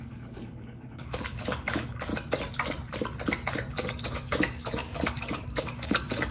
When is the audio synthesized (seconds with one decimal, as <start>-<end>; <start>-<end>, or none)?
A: 0.0-2.1; 3.7-6.3